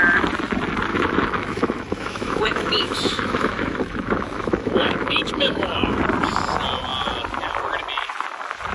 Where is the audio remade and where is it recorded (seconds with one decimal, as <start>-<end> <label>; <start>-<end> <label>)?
0.0-0.9 recorded; 0.9-6.0 remade; 6.0-8.7 recorded